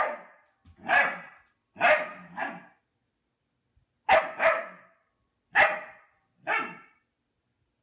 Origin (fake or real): real